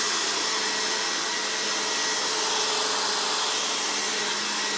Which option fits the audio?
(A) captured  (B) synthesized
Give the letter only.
A